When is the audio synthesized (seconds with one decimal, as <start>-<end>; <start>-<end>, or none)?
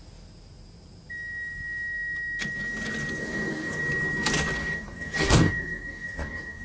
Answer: 3.2-3.8; 4.6-6.6